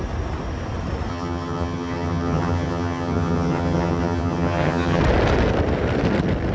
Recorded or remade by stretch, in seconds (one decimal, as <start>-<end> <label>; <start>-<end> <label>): 0.0-1.1 recorded; 1.1-5.0 remade; 5.0-6.5 recorded